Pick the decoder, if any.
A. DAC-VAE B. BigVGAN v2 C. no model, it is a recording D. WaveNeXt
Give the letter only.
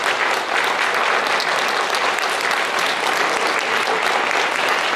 C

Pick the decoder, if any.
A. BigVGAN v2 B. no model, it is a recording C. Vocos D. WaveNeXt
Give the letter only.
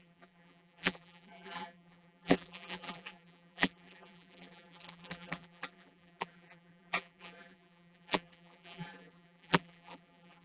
A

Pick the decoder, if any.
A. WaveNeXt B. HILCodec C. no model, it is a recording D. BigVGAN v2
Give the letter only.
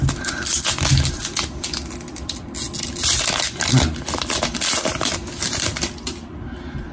C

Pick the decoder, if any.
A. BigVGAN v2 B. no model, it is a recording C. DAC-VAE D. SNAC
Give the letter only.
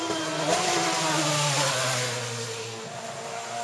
B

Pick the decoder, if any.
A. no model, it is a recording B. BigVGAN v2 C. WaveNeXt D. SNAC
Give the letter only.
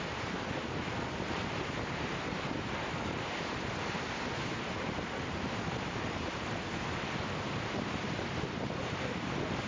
B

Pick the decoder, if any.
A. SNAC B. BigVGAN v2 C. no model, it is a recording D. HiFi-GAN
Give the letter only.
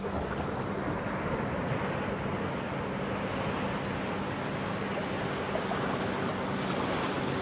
C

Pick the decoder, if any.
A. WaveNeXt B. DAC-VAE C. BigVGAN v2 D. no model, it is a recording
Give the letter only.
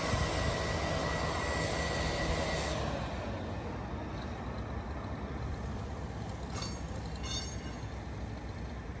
D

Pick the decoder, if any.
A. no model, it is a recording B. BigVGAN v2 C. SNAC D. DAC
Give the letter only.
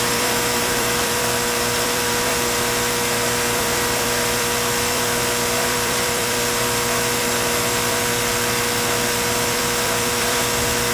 B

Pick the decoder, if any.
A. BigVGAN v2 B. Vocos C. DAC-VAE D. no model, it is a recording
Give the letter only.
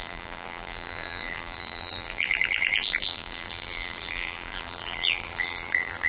A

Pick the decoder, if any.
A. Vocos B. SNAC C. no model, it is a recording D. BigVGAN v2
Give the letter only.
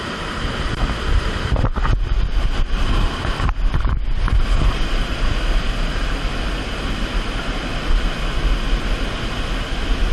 C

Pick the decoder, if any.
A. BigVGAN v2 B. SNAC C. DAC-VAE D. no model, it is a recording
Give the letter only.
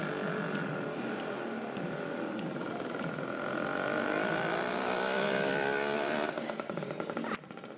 D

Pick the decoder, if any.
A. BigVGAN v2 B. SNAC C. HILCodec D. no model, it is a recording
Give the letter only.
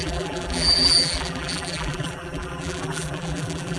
A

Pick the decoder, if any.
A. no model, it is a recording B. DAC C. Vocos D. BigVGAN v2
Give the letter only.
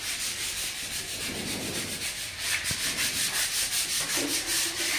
A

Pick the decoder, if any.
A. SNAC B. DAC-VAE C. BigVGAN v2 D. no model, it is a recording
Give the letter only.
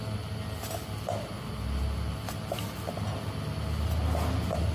D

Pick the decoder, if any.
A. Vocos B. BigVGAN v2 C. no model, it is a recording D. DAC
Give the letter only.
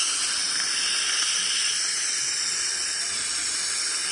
C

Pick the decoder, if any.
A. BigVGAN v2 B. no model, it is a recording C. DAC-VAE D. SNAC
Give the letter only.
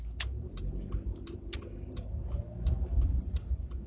B